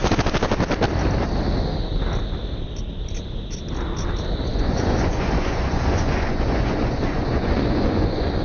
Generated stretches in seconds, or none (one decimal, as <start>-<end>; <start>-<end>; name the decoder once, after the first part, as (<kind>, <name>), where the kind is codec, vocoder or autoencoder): 4.5-8.4 (vocoder, Vocos)